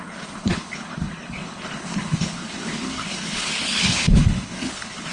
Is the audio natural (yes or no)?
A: no